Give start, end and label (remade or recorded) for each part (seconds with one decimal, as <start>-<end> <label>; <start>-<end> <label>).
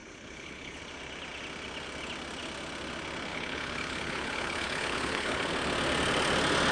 0.0-0.8 remade; 0.8-3.3 recorded; 3.3-5.5 remade; 5.5-6.7 recorded